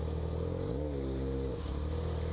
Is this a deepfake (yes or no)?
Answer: no